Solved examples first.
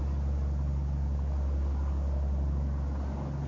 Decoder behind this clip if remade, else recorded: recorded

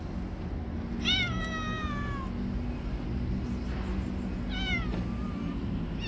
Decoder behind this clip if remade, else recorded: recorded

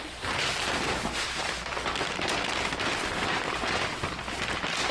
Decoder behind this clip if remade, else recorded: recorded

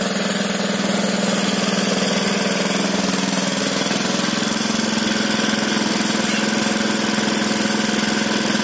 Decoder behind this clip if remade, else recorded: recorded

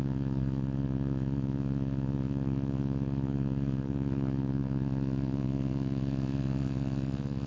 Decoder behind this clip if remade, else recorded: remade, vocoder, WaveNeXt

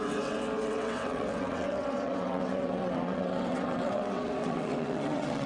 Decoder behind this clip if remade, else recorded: remade, vocoder, WaveNeXt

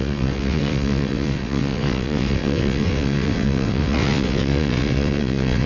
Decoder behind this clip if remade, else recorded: remade, vocoder, WaveNeXt